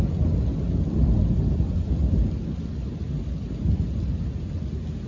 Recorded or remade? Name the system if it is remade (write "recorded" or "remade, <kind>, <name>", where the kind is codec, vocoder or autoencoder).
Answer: recorded